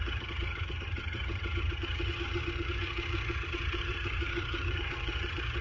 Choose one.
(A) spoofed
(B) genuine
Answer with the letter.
A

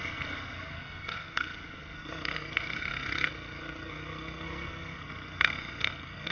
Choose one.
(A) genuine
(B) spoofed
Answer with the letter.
B